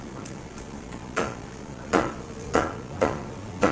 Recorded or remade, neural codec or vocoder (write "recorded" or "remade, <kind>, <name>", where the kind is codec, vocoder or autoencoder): remade, vocoder, Vocos